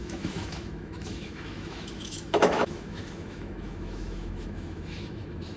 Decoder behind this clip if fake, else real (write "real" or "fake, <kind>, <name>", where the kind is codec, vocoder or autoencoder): fake, autoencoder, DAC-VAE